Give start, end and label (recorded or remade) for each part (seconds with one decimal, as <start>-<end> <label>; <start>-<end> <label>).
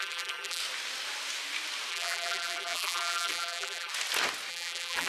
0.0-0.6 remade; 0.6-1.9 recorded; 1.9-3.9 remade; 3.9-4.5 recorded; 4.5-5.1 remade